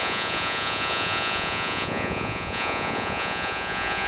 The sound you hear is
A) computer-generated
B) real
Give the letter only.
A